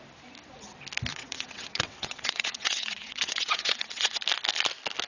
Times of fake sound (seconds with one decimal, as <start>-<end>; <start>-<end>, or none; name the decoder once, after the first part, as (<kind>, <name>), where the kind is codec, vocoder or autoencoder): 1.1-4.2 (vocoder, WaveNeXt)